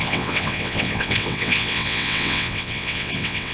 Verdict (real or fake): fake